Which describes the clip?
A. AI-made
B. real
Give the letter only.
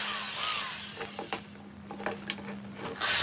B